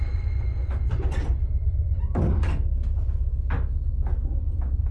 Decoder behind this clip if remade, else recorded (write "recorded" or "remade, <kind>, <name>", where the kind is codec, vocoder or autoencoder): recorded